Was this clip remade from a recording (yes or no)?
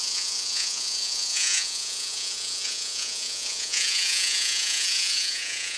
yes